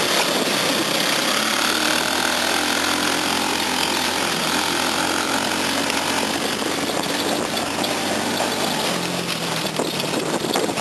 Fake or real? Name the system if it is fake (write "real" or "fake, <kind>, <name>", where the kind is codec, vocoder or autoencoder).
real